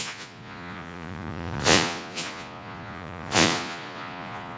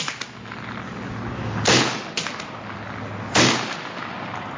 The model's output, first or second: first